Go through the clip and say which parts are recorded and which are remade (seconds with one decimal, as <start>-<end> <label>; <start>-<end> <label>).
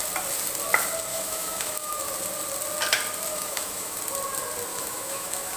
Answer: 0.0-1.1 recorded; 1.1-2.1 remade; 2.1-3.3 recorded; 3.3-4.0 remade; 4.0-4.7 recorded; 4.7-5.6 remade